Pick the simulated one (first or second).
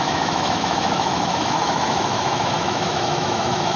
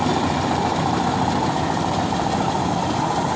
first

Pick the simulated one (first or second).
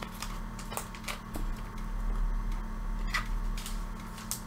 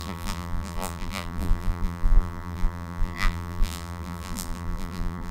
second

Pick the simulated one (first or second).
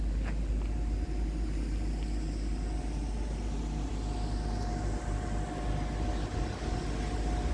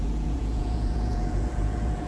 second